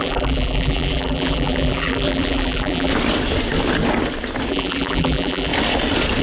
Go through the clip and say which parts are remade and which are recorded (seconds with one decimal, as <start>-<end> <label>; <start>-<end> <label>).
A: 0.0-2.9 remade; 2.9-4.5 recorded; 4.5-5.5 remade; 5.5-6.2 recorded